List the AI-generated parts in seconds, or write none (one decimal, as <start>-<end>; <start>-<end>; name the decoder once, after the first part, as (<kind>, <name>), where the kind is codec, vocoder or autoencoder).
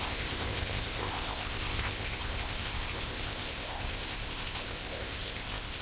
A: 0.0-5.8 (codec, ZipCodec)